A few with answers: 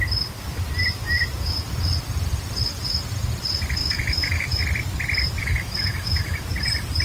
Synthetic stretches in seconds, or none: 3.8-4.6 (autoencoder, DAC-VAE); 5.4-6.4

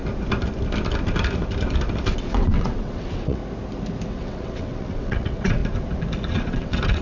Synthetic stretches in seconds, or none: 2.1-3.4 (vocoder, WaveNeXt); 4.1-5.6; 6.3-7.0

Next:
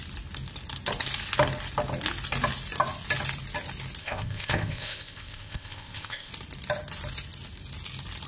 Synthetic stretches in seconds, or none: 4.0-6.3 (codec, ZipCodec)

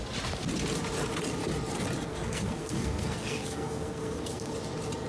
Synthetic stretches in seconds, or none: 2.1-4.6 (codec, SNAC)

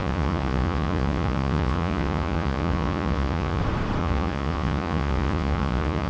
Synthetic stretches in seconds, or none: 0.0-3.6 (vocoder, Vocos); 4.0-6.1

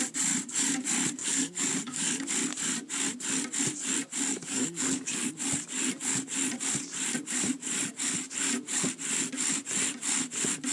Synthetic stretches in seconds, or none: 1.2-2.3 (codec, DAC); 4.3-5.3

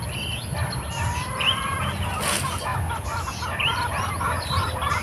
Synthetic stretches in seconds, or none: none